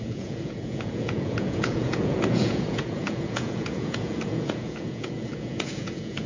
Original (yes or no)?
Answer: no